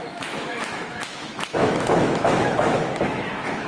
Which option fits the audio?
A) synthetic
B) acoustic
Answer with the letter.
A